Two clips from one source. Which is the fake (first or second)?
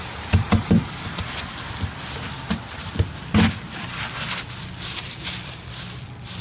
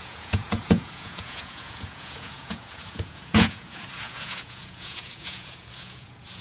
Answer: second